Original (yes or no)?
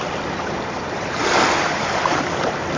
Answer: no